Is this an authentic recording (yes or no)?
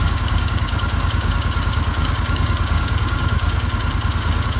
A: no